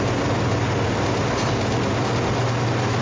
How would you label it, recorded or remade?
recorded